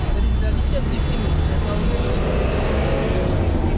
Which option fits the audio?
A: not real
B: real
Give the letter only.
B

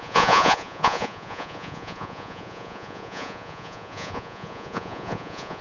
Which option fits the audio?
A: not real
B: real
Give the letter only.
A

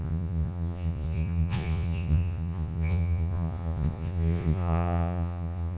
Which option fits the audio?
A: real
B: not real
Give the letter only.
B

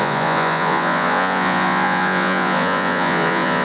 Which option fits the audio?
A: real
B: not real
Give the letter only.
B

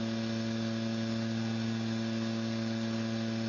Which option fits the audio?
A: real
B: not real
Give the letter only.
A